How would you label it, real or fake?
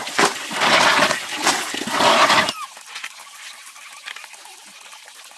real